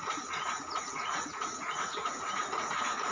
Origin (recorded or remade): remade